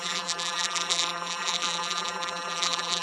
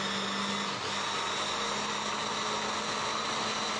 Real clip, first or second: second